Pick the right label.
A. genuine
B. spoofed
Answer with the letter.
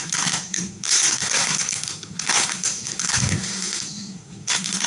B